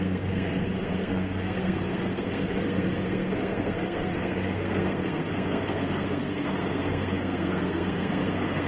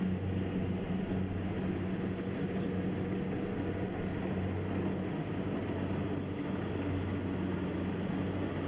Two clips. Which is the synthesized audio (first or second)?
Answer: first